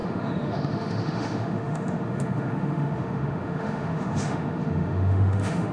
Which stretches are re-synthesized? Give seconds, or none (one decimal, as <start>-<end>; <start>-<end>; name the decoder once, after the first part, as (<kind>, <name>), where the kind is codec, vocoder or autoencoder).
0.0-5.7 (autoencoder, DAC-VAE)

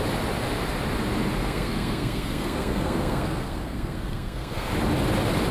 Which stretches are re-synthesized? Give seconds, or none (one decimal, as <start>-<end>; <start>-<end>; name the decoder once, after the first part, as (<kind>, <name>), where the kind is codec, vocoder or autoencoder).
1.4-4.7 (codec, SNAC)